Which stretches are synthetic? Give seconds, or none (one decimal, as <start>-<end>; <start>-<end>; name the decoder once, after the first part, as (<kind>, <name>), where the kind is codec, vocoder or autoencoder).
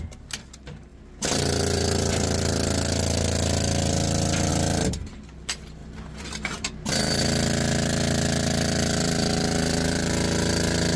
5.8-6.9 (vocoder, BigVGAN v2)